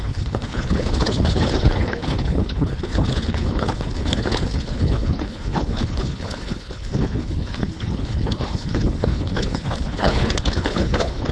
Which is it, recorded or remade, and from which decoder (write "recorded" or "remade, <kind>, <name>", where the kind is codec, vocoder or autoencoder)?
remade, codec, HILCodec